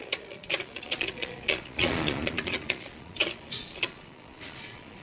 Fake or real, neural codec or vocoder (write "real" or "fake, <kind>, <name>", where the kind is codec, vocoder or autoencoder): fake, vocoder, Vocos